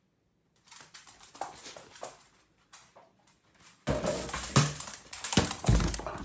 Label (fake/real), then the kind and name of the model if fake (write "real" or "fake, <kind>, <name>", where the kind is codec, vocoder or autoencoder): real